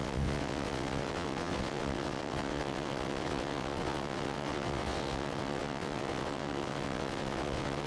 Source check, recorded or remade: remade